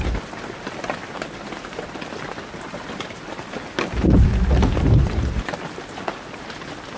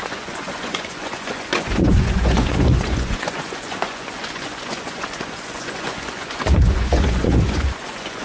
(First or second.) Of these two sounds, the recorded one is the first